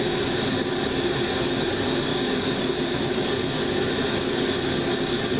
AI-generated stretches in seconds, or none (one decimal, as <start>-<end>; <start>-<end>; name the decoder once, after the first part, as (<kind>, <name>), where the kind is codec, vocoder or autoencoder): 2.1-3.0 (codec, DAC)